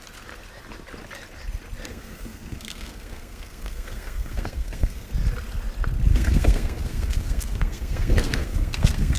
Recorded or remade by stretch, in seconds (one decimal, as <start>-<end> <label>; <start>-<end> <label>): 0.0-1.9 recorded; 1.9-5.1 remade; 5.1-6.1 recorded; 6.1-9.2 remade

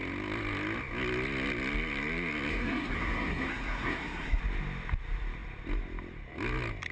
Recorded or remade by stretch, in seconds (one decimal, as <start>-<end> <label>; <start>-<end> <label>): 0.0-2.5 recorded; 2.5-4.4 remade; 4.4-6.9 recorded

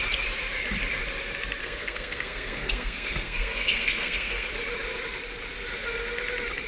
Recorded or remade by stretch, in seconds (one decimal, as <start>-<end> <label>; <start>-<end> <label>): 0.0-1.6 recorded; 1.6-4.5 remade; 4.5-6.7 recorded

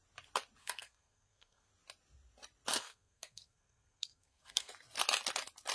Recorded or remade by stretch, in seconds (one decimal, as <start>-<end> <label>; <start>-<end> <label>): 0.0-0.6 recorded; 0.6-1.7 remade; 1.7-2.7 recorded; 2.7-4.7 remade; 4.7-5.7 recorded

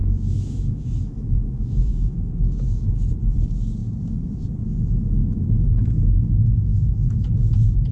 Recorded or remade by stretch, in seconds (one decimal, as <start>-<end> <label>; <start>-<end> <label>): 0.0-2.3 remade; 2.3-5.2 recorded; 5.2-7.3 remade; 7.3-7.9 recorded